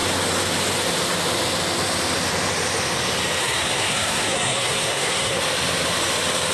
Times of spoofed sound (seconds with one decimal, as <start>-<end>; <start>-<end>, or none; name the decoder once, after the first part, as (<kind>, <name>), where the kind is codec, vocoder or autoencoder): 3.4-5.4 (codec, SNAC)